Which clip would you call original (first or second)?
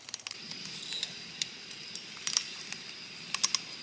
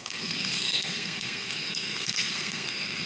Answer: first